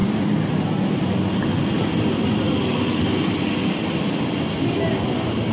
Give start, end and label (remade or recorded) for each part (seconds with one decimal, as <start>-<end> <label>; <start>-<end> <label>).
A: 0.0-5.5 recorded